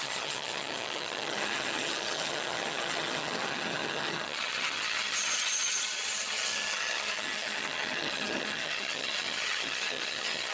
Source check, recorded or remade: remade